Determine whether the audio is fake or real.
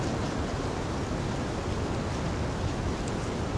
real